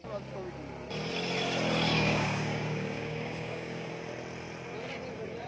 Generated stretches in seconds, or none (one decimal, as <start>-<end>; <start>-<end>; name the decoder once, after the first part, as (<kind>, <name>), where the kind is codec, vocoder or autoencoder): 1.9-3.9 (codec, DAC)